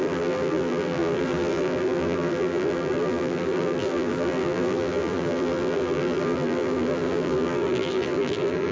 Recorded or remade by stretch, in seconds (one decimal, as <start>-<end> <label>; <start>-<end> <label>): 0.0-8.7 remade